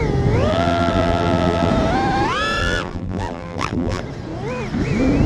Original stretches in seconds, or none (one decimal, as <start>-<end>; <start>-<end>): 0.0-0.5; 1.7-2.6; 4.0-5.3